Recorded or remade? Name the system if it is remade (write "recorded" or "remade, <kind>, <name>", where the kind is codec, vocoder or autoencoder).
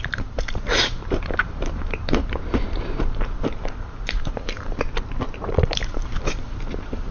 remade, vocoder, BigVGAN v2